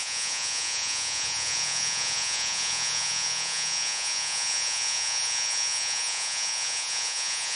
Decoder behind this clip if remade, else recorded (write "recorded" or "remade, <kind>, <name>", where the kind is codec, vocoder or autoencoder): remade, vocoder, Vocos